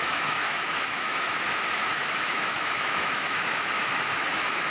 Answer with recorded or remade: remade